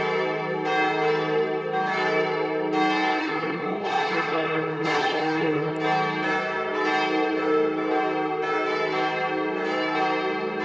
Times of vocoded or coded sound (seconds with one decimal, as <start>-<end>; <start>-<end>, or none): 3.2-5.7